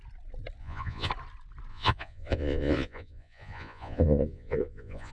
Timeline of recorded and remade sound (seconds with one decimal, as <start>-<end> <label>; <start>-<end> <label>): 0.0-0.6 recorded; 0.6-1.1 remade; 1.1-1.7 recorded; 1.7-5.1 remade